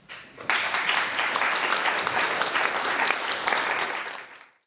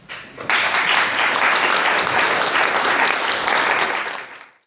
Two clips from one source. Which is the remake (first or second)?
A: first